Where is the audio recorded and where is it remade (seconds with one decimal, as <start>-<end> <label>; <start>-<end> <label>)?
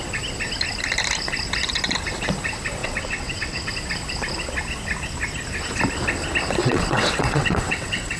0.0-2.8 recorded; 2.8-3.7 remade; 3.7-6.6 recorded; 6.6-8.2 remade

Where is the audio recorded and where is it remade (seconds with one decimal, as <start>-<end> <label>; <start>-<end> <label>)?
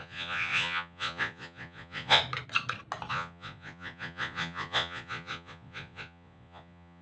0.0-2.2 remade; 2.2-3.1 recorded; 3.1-7.0 remade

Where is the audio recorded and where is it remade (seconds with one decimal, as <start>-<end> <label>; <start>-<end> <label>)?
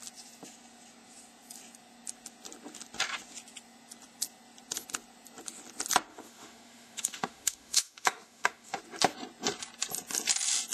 0.0-6.1 recorded; 6.1-8.8 remade; 8.8-10.7 recorded